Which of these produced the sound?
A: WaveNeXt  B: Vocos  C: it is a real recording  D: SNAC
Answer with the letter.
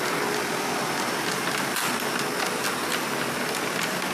C